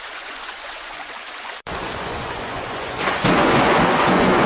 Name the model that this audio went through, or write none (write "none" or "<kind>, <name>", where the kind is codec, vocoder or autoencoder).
vocoder, Vocos